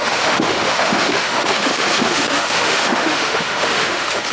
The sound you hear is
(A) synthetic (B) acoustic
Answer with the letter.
A